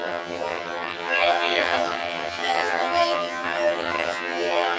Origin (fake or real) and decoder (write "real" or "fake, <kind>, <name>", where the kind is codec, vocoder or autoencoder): fake, vocoder, HiFi-GAN